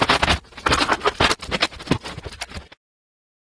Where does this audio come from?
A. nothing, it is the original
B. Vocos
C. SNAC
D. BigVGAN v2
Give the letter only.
A